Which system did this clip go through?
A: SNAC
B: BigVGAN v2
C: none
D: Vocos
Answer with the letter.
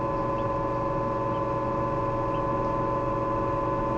C